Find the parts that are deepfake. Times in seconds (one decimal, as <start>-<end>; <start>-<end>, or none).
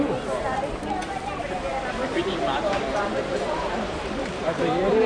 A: 1.7-5.1